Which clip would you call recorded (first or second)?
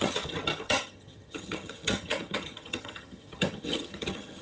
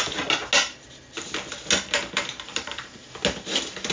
second